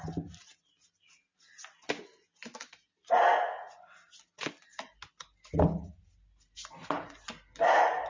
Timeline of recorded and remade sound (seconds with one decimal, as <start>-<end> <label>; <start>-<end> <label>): 0.0-8.1 recorded